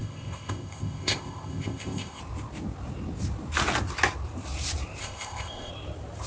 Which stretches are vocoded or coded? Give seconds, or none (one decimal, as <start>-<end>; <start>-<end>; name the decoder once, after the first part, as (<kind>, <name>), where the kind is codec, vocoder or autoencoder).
0.0-2.2 (codec, ZipCodec); 5.0-5.7